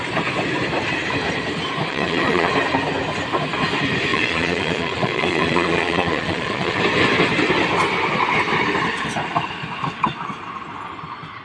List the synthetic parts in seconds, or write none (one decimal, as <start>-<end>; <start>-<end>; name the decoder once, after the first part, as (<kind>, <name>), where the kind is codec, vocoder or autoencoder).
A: 1.9-2.5 (vocoder, Vocos); 4.1-6.8